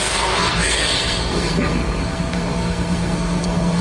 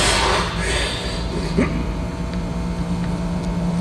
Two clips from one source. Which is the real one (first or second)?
second